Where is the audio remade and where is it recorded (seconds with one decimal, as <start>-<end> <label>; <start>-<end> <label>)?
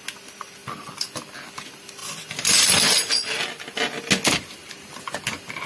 0.0-0.6 recorded; 0.6-1.5 remade; 1.5-2.0 recorded; 2.0-3.1 remade; 3.1-5.7 recorded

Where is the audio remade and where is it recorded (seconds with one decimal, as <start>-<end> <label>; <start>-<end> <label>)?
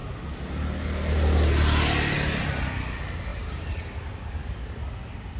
0.0-3.3 recorded; 3.3-4.9 remade; 4.9-5.4 recorded